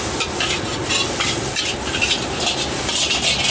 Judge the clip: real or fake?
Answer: real